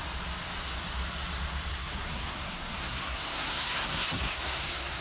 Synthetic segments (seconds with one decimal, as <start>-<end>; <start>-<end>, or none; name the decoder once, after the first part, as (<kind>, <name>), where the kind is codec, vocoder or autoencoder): 1.7-5.0 (codec, SNAC)